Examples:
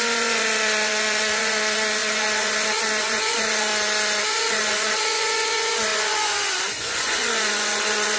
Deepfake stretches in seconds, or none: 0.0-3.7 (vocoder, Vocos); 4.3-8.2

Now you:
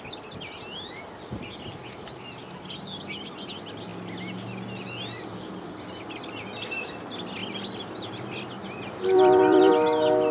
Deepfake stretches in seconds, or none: 7.4-9.7 (vocoder, BigVGAN v2)

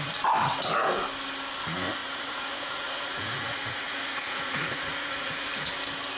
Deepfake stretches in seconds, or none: 2.0-5.7 (vocoder, Vocos)

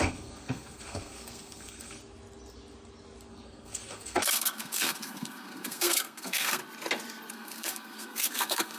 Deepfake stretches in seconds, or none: 0.0-2.0 (codec, SNAC); 3.3-6.6; 7.3-8.8

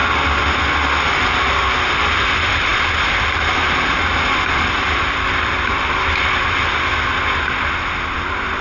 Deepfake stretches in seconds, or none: 0.0-0.6 (vocoder, BigVGAN v2); 2.7-6.6

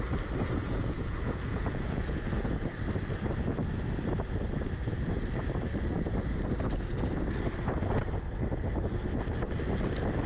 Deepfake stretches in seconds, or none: 0.6-2.1 (vocoder, Vocos)

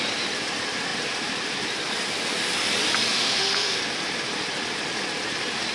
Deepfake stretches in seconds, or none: 3.1-3.8 (autoencoder, DAC-VAE)

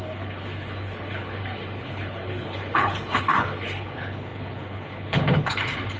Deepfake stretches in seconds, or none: 0.0-6.0 (codec, HILCodec)